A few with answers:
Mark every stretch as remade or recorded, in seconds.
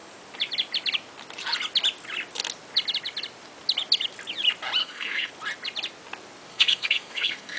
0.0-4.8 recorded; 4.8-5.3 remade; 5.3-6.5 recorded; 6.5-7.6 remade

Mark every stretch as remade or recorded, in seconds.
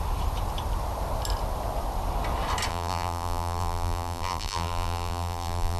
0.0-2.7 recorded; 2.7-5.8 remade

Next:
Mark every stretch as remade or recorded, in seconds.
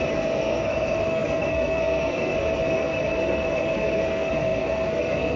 0.0-5.4 remade